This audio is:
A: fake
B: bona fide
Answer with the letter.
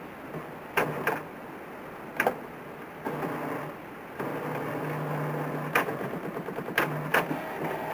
B